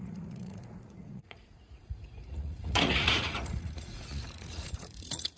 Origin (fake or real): fake